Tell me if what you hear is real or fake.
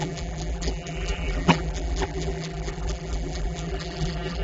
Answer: fake